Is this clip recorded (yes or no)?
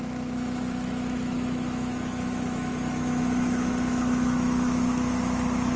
no